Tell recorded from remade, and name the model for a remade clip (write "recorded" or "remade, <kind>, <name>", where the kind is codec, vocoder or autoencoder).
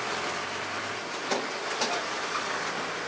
remade, vocoder, BigVGAN v2